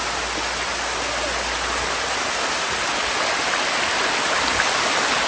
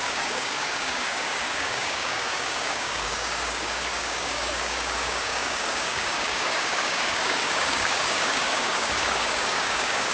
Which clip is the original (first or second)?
first